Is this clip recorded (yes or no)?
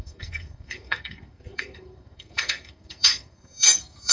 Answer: no